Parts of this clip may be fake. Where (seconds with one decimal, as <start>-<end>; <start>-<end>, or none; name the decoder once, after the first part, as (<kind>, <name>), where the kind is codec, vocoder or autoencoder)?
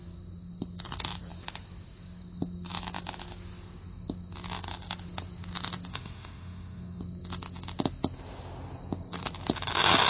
5.9-7.0 (autoencoder, DAC-VAE)